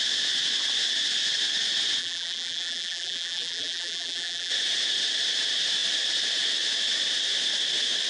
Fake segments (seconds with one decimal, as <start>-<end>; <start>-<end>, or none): 2.0-4.5